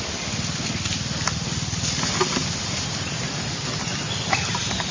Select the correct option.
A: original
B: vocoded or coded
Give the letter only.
A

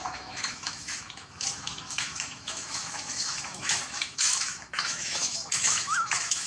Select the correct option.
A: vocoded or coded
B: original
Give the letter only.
A